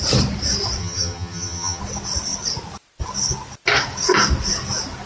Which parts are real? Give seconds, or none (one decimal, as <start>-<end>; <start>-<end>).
0.0-0.8; 1.8-5.1